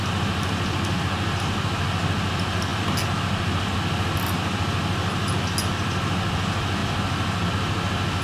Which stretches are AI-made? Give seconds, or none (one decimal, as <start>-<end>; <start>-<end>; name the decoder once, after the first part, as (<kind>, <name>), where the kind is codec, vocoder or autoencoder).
none